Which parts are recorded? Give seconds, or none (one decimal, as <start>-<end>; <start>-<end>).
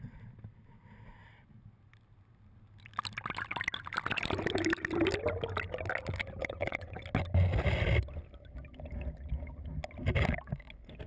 0.0-6.4; 7.0-11.1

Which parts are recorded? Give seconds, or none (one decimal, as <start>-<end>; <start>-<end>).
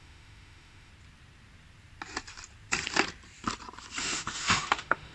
0.9-4.0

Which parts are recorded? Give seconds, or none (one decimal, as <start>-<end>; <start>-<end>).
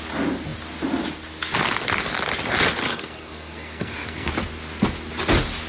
0.0-2.8; 4.3-5.7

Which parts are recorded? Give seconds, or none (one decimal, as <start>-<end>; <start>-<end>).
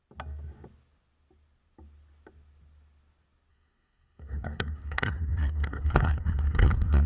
0.0-3.5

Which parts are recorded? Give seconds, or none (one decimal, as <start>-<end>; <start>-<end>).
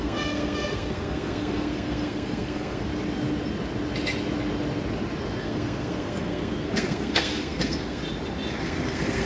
2.9-5.4; 8.0-8.6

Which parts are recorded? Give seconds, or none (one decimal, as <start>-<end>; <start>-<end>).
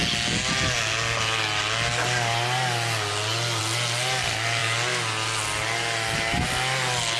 0.0-7.2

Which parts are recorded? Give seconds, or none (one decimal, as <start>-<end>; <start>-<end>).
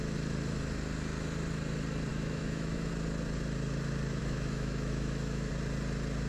0.0-2.1; 2.9-4.2; 5.5-6.3